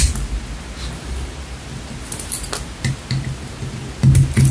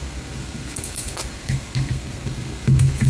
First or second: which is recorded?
first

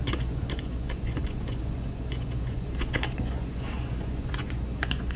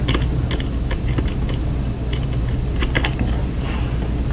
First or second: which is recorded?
second